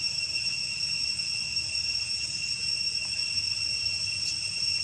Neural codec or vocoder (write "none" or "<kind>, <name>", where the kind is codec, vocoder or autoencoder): none